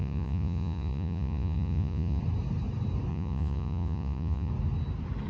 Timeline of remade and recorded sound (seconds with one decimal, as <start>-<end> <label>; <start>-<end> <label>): 0.0-2.2 remade; 2.2-3.1 recorded; 3.1-4.5 remade; 4.5-5.3 recorded